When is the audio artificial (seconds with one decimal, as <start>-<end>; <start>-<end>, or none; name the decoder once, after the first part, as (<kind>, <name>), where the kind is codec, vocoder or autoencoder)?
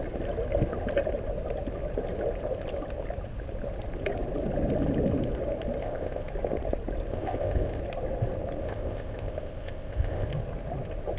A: 5.8-6.3 (codec, ZipCodec); 7.1-7.8; 8.6-10.3